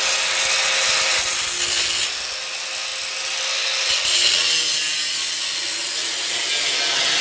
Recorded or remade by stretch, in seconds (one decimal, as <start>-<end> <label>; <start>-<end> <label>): 0.0-7.2 recorded